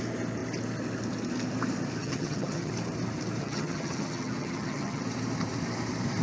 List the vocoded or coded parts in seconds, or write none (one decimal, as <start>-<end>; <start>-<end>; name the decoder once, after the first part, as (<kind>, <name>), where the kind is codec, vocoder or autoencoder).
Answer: 2.0-2.7 (vocoder, HiFi-GAN); 3.4-5.0